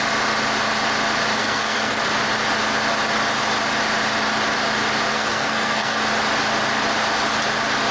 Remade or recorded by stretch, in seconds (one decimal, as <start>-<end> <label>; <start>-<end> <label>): 0.0-1.4 recorded; 1.4-2.0 remade; 2.0-5.1 recorded; 5.1-6.0 remade; 6.0-7.9 recorded